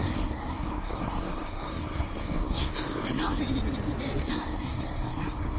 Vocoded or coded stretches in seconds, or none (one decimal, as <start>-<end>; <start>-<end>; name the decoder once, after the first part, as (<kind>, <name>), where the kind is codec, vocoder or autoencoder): 0.0-3.4 (codec, SNAC); 4.2-5.6